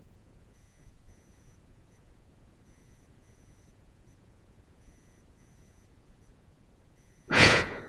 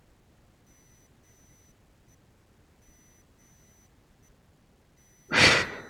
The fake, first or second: first